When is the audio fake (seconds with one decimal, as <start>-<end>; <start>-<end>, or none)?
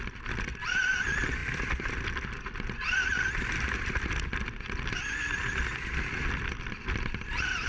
none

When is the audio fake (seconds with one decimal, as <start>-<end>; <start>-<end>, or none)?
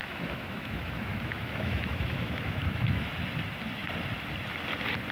0.0-3.1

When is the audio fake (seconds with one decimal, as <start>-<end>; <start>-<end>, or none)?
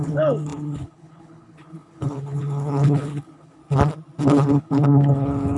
0.0-3.6; 4.2-5.6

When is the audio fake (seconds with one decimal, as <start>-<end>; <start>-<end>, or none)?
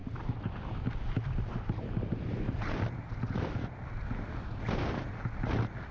none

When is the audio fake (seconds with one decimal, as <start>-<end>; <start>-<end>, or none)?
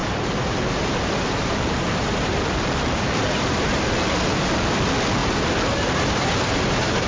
0.0-3.7; 5.2-7.1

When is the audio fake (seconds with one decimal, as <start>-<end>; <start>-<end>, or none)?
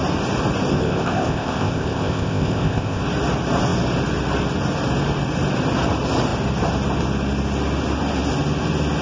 0.7-3.0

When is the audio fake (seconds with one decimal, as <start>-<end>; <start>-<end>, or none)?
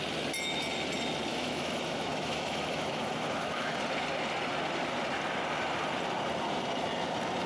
1.3-3.8